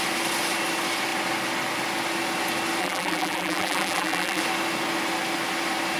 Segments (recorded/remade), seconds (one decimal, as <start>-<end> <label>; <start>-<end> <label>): 0.0-2.8 recorded; 2.8-4.4 remade; 4.4-6.0 recorded